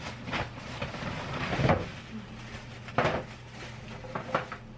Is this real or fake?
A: real